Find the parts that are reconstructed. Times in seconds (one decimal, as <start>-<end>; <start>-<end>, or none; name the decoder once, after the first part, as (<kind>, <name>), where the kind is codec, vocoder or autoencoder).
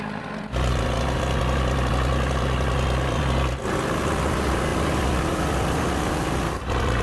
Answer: none